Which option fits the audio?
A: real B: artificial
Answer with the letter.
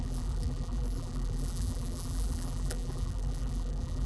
B